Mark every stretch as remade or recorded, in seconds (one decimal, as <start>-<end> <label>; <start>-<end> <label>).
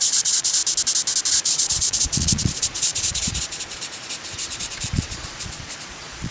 0.0-0.6 remade; 0.6-1.3 recorded; 1.3-6.3 remade